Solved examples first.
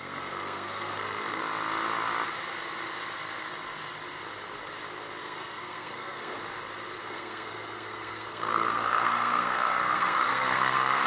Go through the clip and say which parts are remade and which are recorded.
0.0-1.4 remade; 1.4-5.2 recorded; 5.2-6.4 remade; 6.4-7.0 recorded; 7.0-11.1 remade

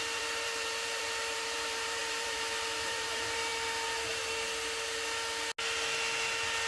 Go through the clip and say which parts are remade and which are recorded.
0.0-3.5 remade; 3.5-6.7 recorded

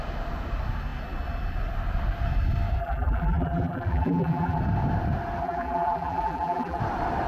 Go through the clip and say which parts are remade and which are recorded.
0.0-2.8 recorded; 2.8-4.6 remade; 4.6-5.4 recorded; 5.4-6.8 remade; 6.8-7.3 recorded

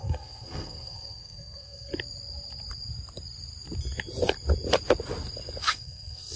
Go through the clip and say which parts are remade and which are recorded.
0.0-1.9 remade; 1.9-5.7 recorded; 5.7-6.4 remade

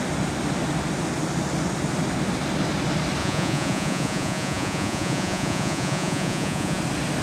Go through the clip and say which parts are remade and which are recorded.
0.0-3.2 recorded; 3.2-6.8 remade; 6.8-7.2 recorded